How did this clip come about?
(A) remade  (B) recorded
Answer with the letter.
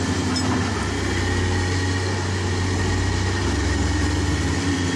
B